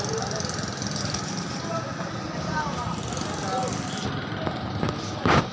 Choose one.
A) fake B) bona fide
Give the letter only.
B